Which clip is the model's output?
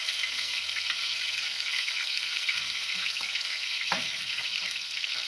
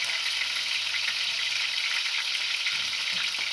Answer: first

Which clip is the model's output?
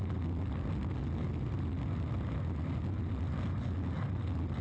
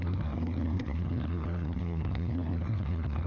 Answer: second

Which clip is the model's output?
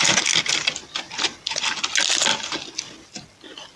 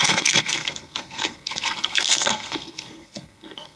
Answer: second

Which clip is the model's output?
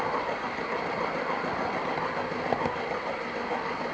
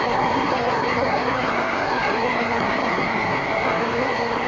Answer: second